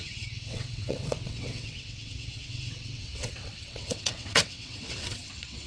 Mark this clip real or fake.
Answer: fake